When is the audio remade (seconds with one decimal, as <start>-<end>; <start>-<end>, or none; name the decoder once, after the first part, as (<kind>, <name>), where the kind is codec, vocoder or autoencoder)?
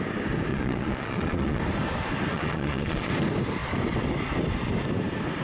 0.5-1.6 (vocoder, Vocos); 2.3-3.1